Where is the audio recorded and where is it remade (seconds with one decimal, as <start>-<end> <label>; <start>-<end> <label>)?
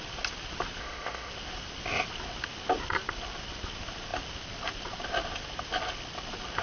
0.0-0.8 recorded; 0.8-1.3 remade; 1.3-6.6 recorded